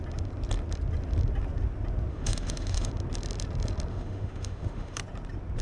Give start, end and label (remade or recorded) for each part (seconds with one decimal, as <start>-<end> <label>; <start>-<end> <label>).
0.0-2.1 recorded; 2.1-2.9 remade; 2.9-3.9 recorded; 3.9-5.0 remade; 5.0-5.6 recorded